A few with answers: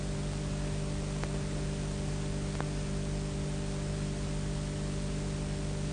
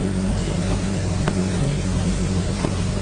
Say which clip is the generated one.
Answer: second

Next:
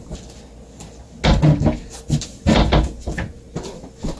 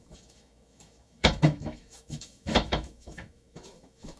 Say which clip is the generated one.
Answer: second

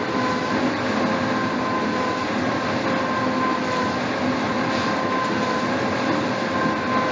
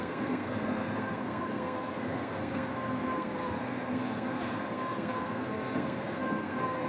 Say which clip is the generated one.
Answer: second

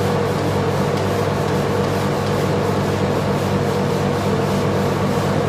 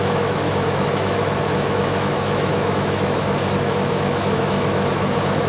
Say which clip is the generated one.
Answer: second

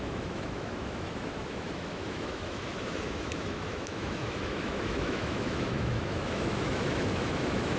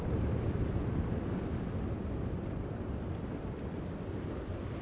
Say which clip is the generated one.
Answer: first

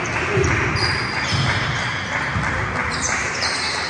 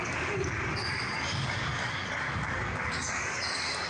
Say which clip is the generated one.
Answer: second